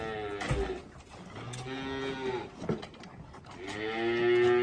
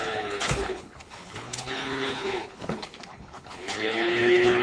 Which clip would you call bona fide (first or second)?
first